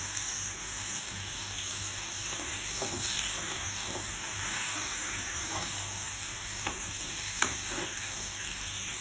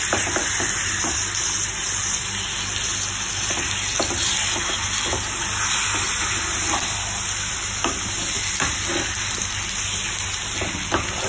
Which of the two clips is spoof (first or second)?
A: first